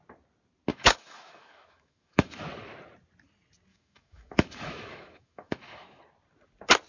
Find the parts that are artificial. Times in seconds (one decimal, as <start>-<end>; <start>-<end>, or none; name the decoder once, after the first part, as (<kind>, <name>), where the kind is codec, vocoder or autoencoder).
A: 0.7-2.4 (autoencoder, DAC-VAE); 3.7-6.0